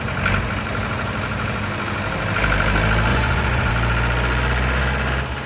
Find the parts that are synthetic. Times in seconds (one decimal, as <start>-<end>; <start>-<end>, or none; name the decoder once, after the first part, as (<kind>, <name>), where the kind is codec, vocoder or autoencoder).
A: 3.1-3.7 (vocoder, Vocos)